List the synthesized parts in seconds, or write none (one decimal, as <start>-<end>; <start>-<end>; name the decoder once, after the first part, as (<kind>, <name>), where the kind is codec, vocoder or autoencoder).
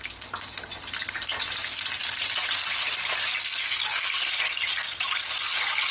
3.4-4.3 (codec, SNAC)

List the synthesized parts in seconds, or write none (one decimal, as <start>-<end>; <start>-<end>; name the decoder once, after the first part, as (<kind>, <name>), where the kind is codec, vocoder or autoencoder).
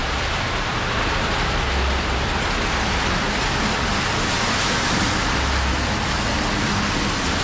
none